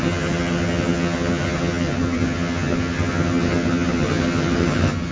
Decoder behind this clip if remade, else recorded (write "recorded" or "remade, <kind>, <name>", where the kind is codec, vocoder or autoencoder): remade, vocoder, HiFi-GAN